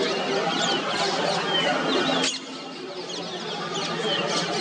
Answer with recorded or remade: recorded